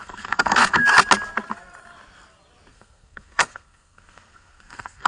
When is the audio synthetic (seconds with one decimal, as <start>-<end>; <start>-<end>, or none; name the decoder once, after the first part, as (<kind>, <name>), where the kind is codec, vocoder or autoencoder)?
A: 0.0-0.8 (codec, SNAC); 2.7-5.1